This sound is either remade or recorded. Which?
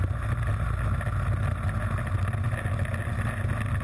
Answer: recorded